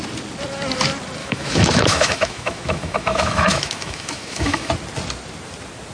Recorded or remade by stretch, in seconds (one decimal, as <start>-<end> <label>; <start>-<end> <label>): 0.0-1.2 recorded; 1.2-4.7 remade; 4.7-5.9 recorded